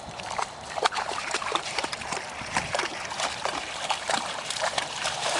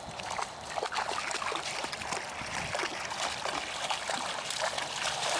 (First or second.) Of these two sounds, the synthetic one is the first